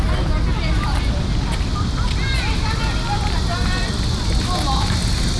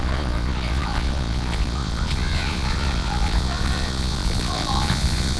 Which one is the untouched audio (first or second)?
first